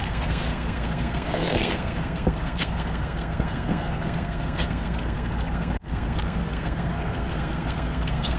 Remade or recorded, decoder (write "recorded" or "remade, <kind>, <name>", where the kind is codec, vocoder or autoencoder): remade, codec, SNAC